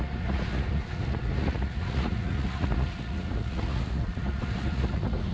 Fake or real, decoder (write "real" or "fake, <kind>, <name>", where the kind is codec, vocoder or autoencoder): fake, vocoder, Vocos